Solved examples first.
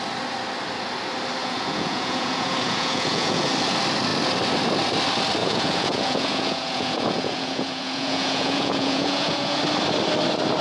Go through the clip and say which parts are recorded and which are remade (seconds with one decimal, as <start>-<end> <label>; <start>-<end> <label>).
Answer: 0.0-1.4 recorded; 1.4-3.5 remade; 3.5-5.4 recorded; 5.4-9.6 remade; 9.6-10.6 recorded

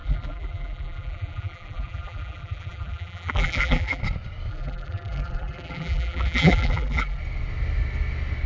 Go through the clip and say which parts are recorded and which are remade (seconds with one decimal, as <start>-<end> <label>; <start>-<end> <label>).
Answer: 0.0-4.0 remade; 4.0-4.5 recorded; 4.5-7.2 remade; 7.2-8.5 recorded

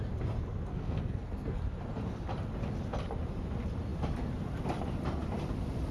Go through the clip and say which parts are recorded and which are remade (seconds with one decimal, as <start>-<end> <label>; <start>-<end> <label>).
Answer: 0.0-0.7 recorded; 0.7-1.6 remade; 1.6-5.9 recorded